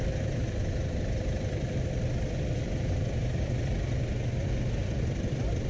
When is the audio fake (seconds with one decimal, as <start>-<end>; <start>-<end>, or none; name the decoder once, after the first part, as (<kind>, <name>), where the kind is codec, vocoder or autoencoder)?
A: 0.6-4.0 (vocoder, BigVGAN v2); 4.8-5.7